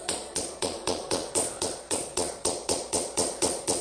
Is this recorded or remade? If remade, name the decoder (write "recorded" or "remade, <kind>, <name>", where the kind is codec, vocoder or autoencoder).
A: remade, vocoder, Vocos